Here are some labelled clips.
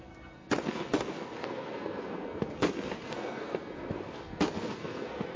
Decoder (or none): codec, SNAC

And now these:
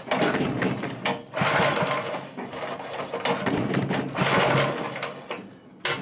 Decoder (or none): none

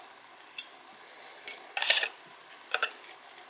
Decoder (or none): none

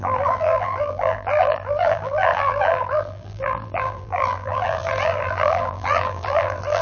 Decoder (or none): vocoder, BigVGAN v2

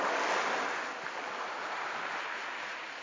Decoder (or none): vocoder, BigVGAN v2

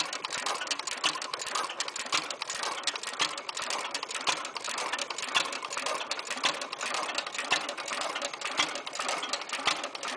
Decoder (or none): none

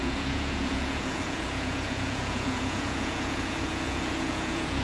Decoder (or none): vocoder, Vocos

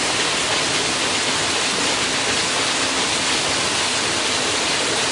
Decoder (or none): none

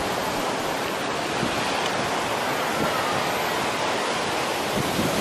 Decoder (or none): none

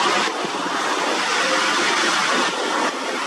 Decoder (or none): none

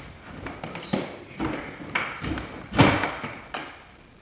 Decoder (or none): none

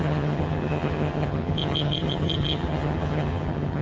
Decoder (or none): vocoder, HiFi-GAN